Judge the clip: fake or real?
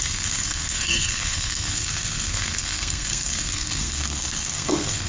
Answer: fake